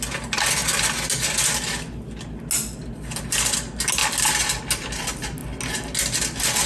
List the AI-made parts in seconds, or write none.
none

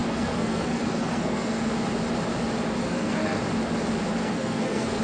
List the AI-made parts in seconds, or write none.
0.0-1.7 (codec, SNAC); 2.8-3.4; 4.2-5.0

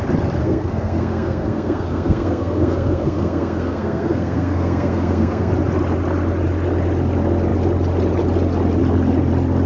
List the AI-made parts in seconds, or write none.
0.4-5.5 (codec, SNAC)

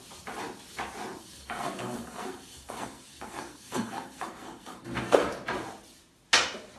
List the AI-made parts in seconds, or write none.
1.2-5.3 (codec, SNAC)

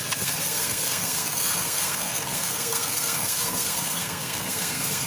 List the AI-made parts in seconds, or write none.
0.0-5.1 (codec, SNAC)